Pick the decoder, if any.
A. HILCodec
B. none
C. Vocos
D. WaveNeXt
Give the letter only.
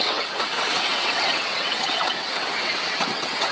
D